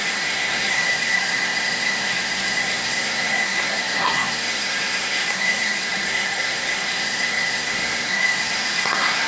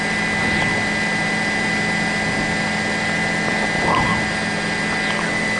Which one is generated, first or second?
first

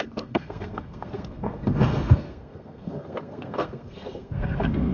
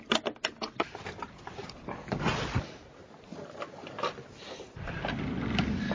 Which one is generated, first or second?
first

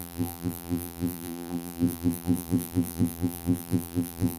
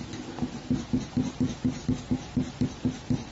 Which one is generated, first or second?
first